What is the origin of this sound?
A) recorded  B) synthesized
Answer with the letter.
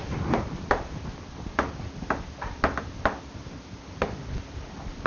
A